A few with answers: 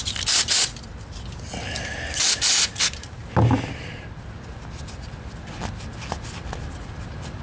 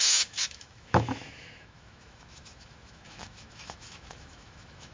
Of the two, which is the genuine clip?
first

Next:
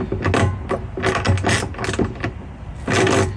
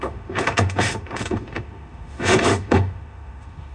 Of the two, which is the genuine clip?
first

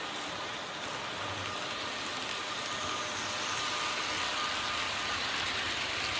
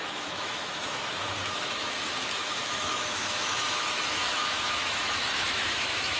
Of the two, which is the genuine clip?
first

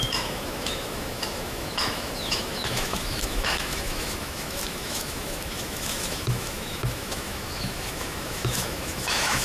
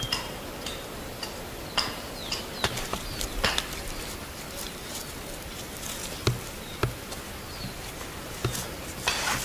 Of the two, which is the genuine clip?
second